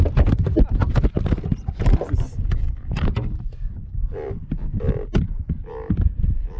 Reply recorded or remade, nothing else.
recorded